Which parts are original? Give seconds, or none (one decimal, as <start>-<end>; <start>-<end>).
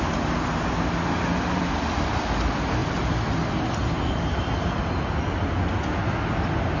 0.0-1.6; 2.2-2.8; 4.3-6.8